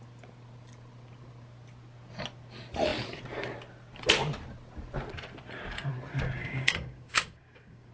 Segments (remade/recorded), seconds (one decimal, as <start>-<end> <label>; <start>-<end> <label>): 0.0-6.4 recorded; 6.4-7.9 remade